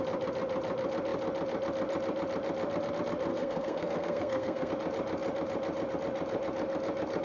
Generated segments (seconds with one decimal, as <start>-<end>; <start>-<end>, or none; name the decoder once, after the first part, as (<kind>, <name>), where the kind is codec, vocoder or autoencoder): 3.3-4.7 (codec, SNAC)